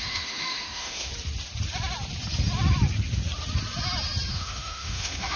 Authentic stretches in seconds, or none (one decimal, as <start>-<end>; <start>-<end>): 1.1-4.3